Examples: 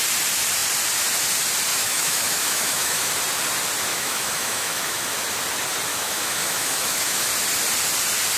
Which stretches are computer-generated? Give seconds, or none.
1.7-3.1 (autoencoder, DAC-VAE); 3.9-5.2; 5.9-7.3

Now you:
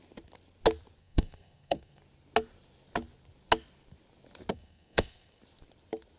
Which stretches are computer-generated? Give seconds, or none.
1.0-2.0 (codec, SNAC); 4.5-5.4

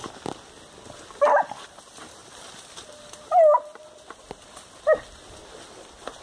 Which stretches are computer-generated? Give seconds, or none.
none

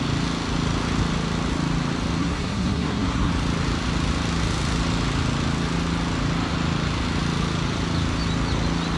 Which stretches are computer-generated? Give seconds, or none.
2.2-3.3 (codec, SNAC)

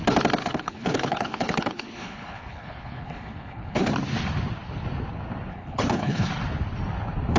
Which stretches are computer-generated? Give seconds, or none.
0.4-3.9 (codec, HILCodec); 5.5-6.3

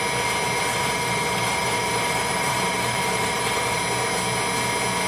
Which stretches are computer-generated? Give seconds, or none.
0.7-3.8 (vocoder, BigVGAN v2)